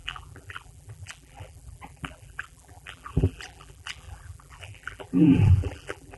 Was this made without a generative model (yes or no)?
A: no